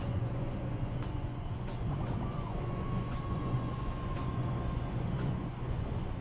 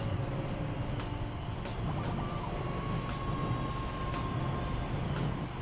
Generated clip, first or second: first